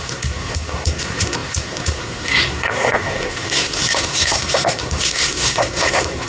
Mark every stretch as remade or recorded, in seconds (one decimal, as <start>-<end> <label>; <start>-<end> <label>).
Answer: 0.0-6.3 remade